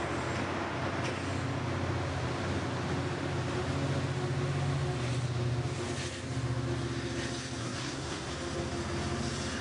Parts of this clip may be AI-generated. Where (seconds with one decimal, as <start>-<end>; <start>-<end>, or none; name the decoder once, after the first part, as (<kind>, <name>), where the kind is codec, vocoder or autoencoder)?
7.6-8.3 (codec, SNAC)